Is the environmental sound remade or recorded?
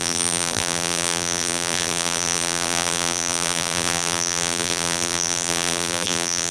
remade